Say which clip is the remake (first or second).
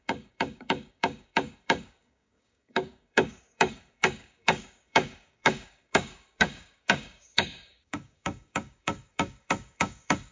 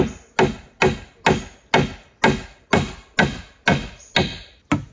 first